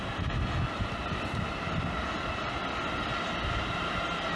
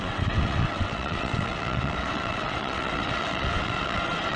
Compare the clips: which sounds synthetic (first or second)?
second